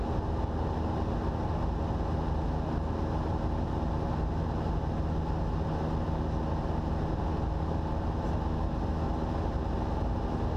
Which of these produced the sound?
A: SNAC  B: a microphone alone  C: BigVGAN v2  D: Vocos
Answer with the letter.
B